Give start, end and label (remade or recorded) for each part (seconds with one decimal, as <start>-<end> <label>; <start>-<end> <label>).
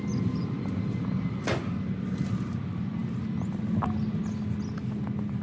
0.0-5.4 recorded